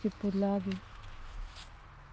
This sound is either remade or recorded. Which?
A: remade